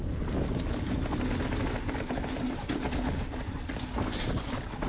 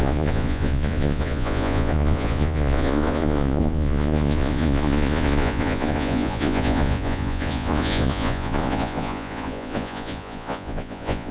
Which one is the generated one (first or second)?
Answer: second